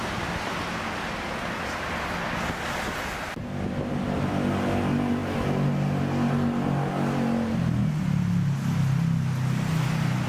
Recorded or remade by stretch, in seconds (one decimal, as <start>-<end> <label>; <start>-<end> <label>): 0.0-10.3 recorded